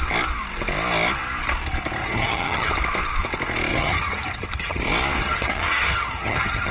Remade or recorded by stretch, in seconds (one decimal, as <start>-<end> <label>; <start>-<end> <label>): 0.0-2.0 recorded; 2.0-2.7 remade; 2.7-3.7 recorded; 3.7-4.8 remade; 4.8-5.2 recorded; 5.2-6.7 remade